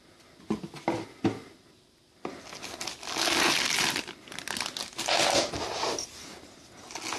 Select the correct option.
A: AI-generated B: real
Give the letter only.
B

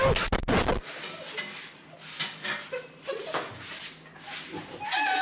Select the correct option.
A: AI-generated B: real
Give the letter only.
B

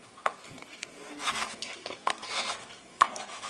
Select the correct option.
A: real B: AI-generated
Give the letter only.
B